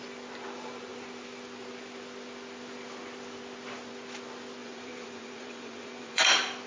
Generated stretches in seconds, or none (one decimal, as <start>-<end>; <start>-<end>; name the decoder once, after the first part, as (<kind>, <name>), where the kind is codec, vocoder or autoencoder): 4.6-6.3 (vocoder, Vocos)